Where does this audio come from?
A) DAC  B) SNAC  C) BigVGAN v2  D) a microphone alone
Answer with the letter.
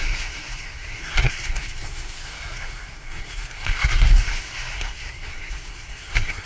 B